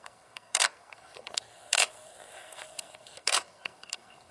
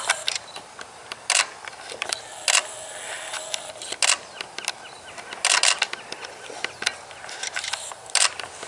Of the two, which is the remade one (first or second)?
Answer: first